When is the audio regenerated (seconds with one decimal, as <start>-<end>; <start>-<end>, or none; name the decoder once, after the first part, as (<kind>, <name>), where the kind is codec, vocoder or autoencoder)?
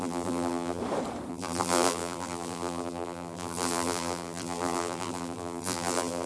0.0-0.8 (vocoder, BigVGAN v2); 1.3-6.3